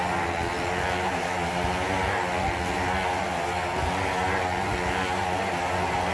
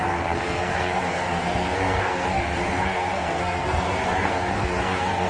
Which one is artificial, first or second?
second